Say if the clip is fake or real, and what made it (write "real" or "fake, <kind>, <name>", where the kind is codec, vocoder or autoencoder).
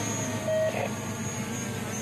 real